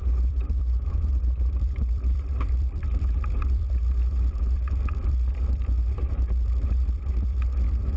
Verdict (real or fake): fake